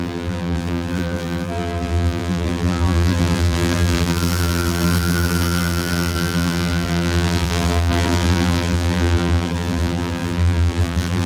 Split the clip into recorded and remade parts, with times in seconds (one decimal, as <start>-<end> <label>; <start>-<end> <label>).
0.0-11.3 remade